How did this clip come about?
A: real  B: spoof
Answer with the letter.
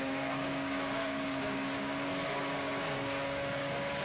B